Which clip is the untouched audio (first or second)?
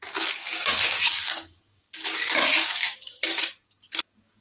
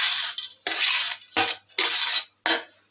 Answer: second